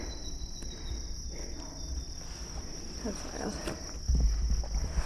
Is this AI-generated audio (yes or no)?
no